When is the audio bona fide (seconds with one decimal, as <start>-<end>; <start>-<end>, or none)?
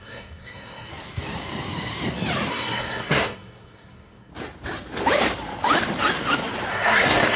0.9-2.5; 4.3-6.7